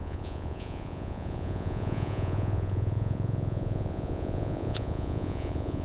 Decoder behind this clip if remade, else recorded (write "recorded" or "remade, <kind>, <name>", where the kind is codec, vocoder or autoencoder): remade, vocoder, Vocos